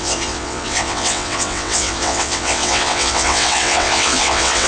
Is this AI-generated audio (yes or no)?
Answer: yes